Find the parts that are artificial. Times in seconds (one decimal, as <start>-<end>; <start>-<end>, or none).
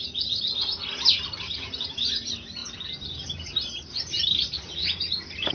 none